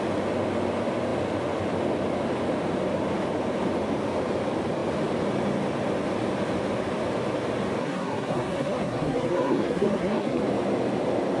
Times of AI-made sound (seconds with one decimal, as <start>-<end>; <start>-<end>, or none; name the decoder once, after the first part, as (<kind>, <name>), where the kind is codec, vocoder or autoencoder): 7.8-10.4 (codec, SNAC)